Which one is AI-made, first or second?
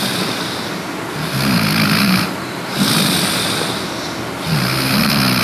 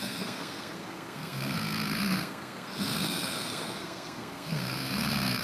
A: second